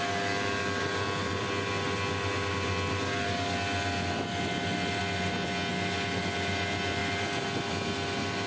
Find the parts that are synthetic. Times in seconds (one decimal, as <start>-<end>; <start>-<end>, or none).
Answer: none